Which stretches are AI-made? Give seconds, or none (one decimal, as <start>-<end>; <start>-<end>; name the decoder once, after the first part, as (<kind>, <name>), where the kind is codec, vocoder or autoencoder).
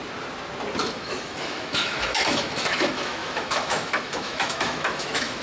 0.8-5.4 (autoencoder, DAC-VAE)